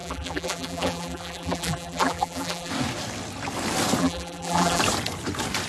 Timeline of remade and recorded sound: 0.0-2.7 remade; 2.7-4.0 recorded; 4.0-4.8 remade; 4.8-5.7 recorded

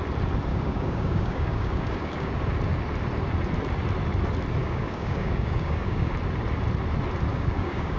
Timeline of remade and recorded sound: 0.0-0.5 recorded; 0.5-2.3 remade; 2.3-4.6 recorded; 4.6-6.1 remade; 6.1-7.3 recorded; 7.3-8.0 remade

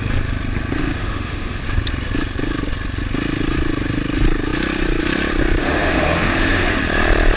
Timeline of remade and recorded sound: 0.0-0.8 recorded; 0.8-1.6 remade; 1.6-5.6 recorded; 5.6-6.8 remade; 6.8-7.4 recorded